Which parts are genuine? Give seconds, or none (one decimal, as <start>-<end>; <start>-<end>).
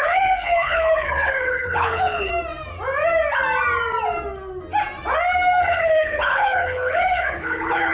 2.3-5.6